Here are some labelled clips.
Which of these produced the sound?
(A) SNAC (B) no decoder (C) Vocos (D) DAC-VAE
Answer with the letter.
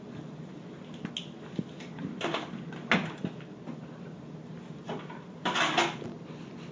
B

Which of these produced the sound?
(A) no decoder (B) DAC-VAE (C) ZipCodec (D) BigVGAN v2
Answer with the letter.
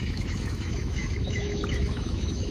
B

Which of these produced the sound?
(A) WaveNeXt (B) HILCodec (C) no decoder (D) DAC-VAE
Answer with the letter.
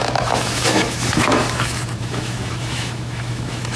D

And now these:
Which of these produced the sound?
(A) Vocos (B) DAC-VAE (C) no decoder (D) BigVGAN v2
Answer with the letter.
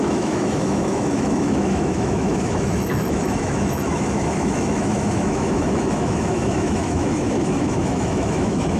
B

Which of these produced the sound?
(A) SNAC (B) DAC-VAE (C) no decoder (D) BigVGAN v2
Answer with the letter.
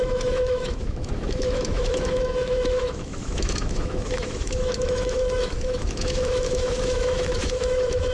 B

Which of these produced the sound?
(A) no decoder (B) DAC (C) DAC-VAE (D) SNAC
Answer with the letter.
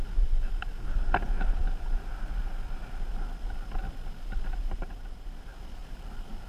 A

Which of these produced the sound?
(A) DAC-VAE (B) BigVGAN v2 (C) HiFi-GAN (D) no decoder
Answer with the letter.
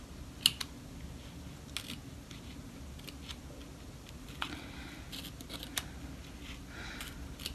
D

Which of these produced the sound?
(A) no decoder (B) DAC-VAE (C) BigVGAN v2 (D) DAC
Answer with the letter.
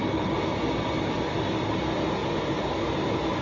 A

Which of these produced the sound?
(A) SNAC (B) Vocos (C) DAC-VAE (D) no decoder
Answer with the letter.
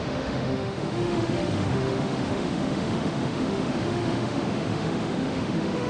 C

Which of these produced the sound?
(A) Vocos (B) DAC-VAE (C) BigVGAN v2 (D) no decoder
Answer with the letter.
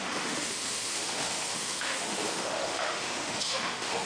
B